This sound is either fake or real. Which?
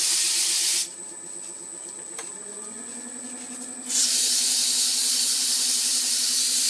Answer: real